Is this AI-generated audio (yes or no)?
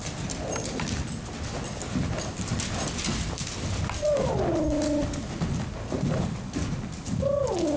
no